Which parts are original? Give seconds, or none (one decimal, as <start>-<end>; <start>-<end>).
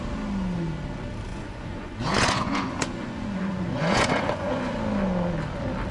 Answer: 0.0-1.3; 4.7-5.9